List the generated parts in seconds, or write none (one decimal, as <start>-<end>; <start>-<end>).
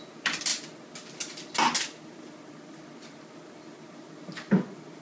none